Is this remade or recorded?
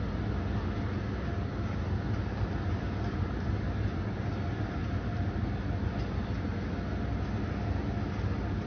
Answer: recorded